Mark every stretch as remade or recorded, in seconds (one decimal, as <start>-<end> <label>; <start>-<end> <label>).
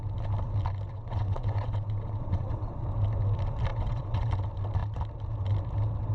0.0-0.9 recorded; 0.9-2.7 remade; 2.7-3.7 recorded; 3.7-4.3 remade; 4.3-6.1 recorded